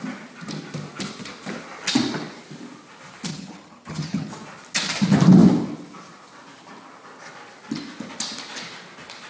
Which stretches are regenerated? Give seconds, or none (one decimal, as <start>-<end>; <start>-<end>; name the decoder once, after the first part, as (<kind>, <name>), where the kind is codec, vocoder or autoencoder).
3.3-4.3 (vocoder, HiFi-GAN)